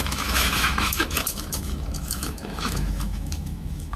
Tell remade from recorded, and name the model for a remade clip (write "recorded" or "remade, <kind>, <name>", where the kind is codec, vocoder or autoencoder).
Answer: remade, autoencoder, DAC-VAE